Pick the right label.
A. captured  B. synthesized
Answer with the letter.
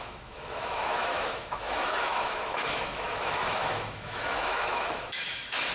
B